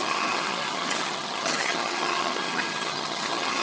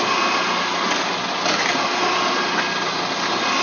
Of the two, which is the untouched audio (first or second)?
second